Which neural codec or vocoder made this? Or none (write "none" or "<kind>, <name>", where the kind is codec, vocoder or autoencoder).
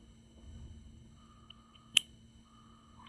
codec, HILCodec